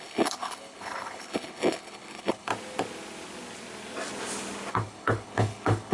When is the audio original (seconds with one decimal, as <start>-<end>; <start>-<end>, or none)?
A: 2.5-4.7